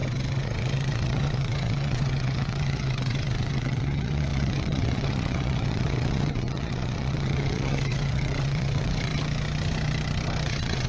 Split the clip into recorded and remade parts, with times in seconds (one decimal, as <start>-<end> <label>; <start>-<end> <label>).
0.0-9.1 remade; 9.1-10.5 recorded; 10.5-10.9 remade